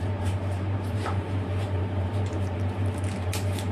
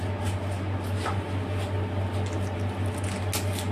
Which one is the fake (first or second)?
first